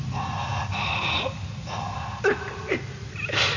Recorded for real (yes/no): yes